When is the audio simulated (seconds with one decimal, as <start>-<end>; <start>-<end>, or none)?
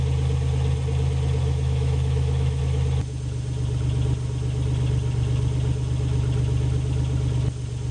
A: 1.4-2.6